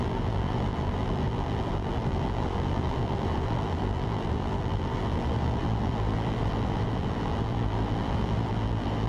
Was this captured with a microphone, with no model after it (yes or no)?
no